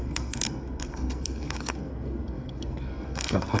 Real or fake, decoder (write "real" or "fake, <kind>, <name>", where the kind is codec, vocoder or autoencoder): fake, codec, SNAC